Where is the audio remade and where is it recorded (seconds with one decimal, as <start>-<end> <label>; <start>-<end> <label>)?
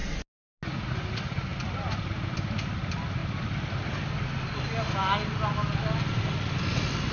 0.0-7.1 recorded